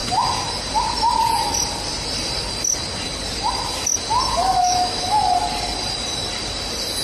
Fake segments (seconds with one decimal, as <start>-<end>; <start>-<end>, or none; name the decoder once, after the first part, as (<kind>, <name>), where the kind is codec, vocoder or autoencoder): 4.4-5.3 (autoencoder, DAC-VAE)

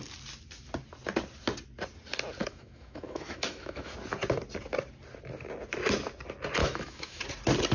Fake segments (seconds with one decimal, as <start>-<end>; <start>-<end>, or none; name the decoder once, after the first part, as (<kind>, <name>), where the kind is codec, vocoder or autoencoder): 2.4-3.9 (autoencoder, DAC-VAE); 6.6-7.2

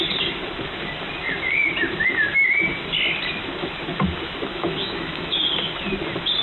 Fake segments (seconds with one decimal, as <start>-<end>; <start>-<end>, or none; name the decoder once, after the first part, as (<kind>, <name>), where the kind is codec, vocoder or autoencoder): 4.5-5.4 (autoencoder, DAC-VAE)

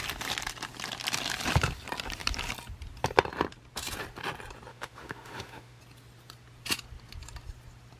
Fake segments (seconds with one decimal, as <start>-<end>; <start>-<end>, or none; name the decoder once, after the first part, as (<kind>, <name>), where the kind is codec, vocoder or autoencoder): 4.7-5.8 (autoencoder, DAC-VAE)